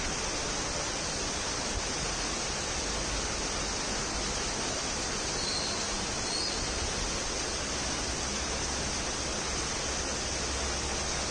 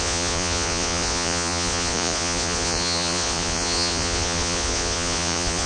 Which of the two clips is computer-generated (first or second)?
second